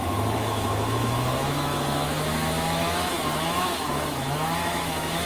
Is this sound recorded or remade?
remade